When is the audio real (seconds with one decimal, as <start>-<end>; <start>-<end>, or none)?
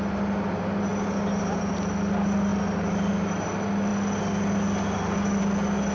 0.0-5.9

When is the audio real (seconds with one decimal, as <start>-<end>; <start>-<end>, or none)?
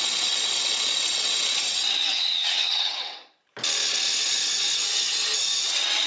3.2-4.2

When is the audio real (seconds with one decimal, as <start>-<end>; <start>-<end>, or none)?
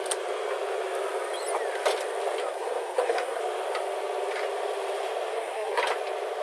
0.0-2.4; 3.4-5.3; 5.8-6.4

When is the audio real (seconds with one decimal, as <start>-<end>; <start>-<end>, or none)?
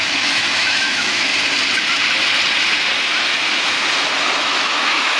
1.3-4.4